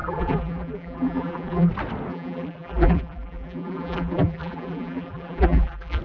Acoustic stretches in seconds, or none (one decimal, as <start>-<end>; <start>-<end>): 1.7-2.1